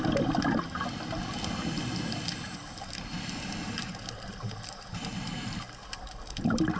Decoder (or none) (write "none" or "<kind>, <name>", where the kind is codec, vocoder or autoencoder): none